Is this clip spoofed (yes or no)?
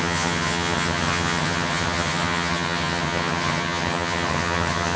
yes